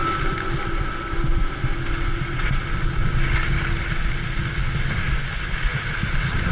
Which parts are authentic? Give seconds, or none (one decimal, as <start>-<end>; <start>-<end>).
0.0-6.5